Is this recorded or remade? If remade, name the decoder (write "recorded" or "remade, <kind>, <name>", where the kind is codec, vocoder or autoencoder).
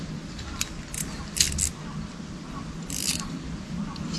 recorded